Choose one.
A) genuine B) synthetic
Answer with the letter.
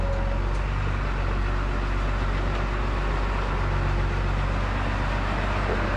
A